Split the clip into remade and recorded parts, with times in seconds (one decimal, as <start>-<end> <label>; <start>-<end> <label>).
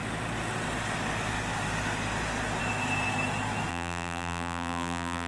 0.0-3.7 recorded; 3.7-5.3 remade